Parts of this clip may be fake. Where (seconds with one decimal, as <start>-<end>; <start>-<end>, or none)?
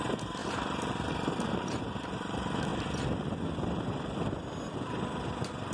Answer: 0.0-2.7